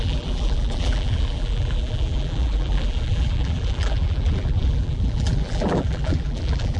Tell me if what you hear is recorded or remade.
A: remade